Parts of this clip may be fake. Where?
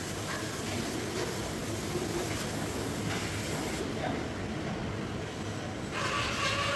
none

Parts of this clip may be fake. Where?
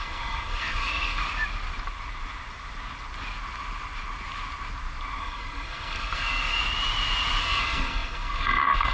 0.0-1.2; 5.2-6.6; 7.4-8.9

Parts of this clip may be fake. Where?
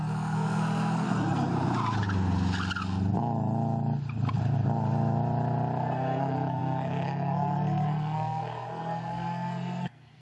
0.0-1.5; 5.8-10.2